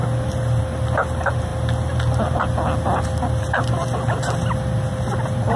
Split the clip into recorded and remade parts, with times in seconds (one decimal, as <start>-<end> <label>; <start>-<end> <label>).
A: 0.0-5.6 recorded

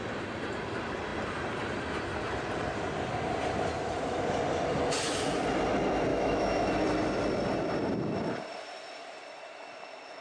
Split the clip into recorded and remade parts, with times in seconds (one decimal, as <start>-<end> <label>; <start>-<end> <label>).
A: 0.0-6.1 recorded; 6.1-6.7 remade; 6.7-10.2 recorded

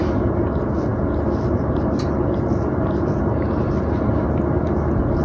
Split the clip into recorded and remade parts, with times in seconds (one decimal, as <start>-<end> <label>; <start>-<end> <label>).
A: 0.0-5.2 recorded

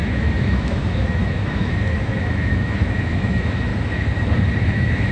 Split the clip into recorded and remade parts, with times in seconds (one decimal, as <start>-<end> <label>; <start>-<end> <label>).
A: 0.0-3.7 remade; 3.7-4.6 recorded; 4.6-5.1 remade

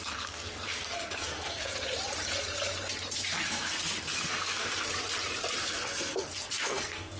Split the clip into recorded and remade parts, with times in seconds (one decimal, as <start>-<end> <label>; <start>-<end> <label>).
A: 0.0-1.7 remade; 1.7-3.3 recorded; 3.3-4.9 remade; 4.9-5.6 recorded; 5.6-7.2 remade

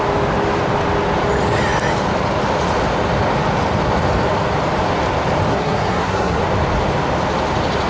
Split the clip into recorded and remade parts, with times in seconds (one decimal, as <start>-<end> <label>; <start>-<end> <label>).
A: 0.0-5.5 recorded; 5.5-6.4 remade; 6.4-7.9 recorded

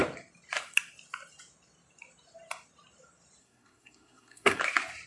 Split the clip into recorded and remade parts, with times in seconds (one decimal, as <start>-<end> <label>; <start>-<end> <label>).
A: 0.0-3.4 recorded; 3.4-4.6 remade; 4.6-5.1 recorded

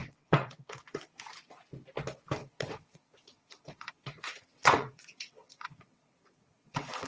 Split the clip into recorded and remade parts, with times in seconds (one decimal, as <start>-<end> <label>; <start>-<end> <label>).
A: 0.0-1.1 remade; 1.1-2.4 recorded; 2.4-7.1 remade